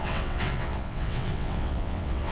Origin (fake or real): fake